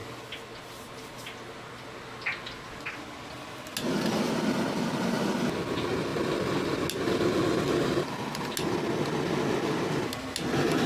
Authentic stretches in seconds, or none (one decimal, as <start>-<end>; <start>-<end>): 0.0-10.9